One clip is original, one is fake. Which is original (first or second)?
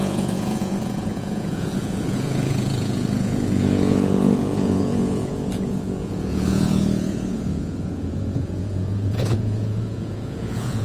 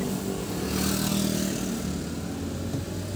second